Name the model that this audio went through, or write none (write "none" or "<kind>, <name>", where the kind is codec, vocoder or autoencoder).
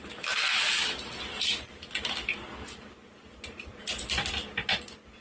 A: none